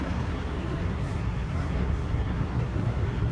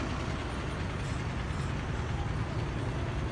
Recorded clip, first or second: second